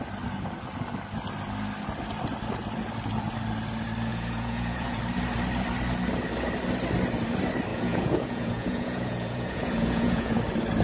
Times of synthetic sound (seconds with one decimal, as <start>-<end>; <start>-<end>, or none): 4.1-5.0; 7.7-10.4